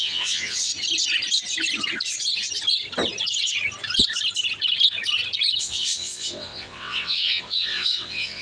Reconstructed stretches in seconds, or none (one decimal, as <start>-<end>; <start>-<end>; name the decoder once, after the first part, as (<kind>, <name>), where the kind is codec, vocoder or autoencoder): 0.0-0.7 (vocoder, WaveNeXt); 5.6-8.4